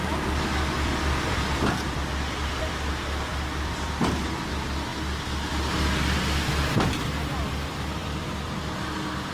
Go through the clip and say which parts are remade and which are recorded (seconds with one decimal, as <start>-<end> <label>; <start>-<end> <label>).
0.0-2.9 remade; 2.9-3.3 recorded; 3.3-4.5 remade; 4.5-8.0 recorded; 8.0-8.6 remade; 8.6-9.3 recorded